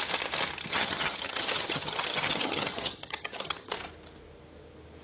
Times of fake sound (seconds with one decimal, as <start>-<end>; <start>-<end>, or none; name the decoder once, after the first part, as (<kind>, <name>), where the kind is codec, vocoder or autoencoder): 0.7-3.7 (vocoder, HiFi-GAN)